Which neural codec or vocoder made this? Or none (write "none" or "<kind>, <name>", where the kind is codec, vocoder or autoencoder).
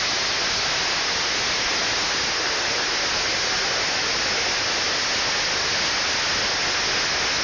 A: none